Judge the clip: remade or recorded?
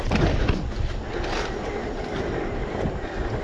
recorded